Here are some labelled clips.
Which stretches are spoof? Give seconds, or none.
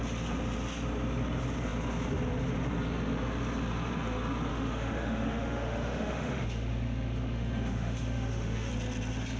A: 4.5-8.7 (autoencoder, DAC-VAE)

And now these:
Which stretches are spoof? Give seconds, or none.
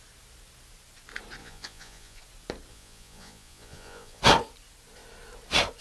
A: 1.4-2.2 (vocoder, Vocos); 2.7-4.2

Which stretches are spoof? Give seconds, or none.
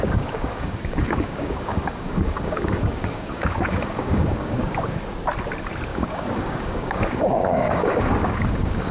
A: 0.0-4.7 (codec, DAC); 5.9-8.9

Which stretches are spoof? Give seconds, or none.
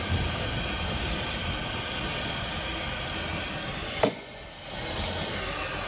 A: 3.8-4.4 (vocoder, Vocos)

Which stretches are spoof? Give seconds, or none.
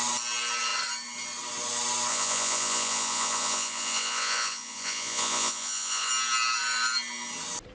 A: 2.1-6.1 (vocoder, Vocos)